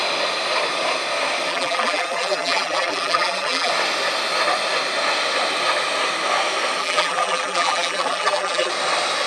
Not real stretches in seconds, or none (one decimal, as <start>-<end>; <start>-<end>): 1.5-3.7; 6.8-8.7